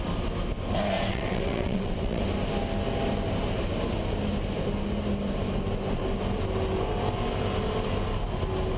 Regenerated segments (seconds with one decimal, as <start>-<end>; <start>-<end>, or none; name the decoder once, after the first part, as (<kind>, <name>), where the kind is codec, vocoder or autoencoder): 1.1-2.2 (vocoder, WaveNeXt)